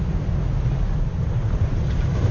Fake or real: real